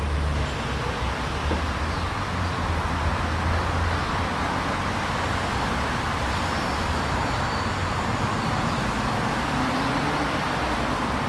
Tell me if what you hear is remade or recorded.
recorded